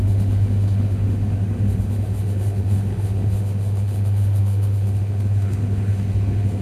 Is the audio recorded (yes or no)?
no